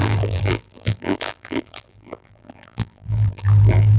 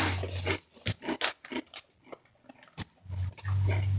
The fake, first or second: first